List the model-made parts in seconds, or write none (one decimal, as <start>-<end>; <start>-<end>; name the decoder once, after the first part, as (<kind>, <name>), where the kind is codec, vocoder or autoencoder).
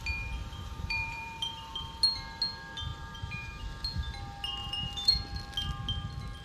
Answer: 0.4-1.8 (vocoder, BigVGAN v2); 2.9-3.6; 4.6-5.2